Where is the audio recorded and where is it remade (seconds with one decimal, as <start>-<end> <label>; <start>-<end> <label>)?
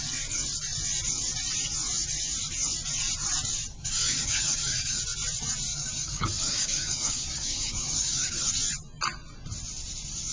0.0-3.7 recorded; 3.7-5.0 remade; 5.0-5.7 recorded; 5.7-8.5 remade; 8.5-10.3 recorded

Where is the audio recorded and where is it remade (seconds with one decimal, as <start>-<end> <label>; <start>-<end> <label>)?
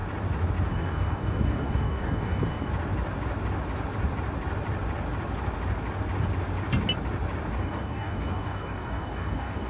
0.0-0.7 recorded; 0.7-2.7 remade; 2.7-7.6 recorded; 7.6-9.7 remade